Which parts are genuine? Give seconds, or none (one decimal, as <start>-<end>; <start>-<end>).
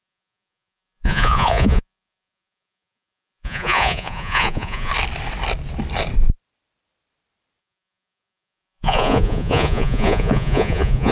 4.9-7.6